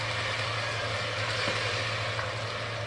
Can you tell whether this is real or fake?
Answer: real